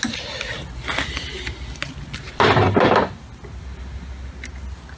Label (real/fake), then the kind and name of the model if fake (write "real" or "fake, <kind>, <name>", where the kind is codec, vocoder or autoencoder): real